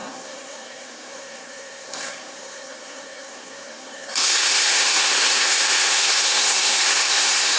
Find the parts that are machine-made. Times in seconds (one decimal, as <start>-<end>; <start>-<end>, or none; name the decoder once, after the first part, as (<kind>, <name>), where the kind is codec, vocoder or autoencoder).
0.0-7.6 (codec, SNAC)